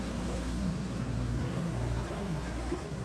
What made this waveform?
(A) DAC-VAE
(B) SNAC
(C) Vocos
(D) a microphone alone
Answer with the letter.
B